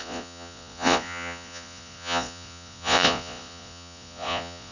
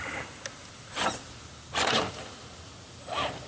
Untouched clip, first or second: second